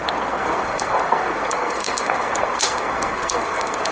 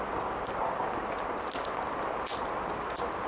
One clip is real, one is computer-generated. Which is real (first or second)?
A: second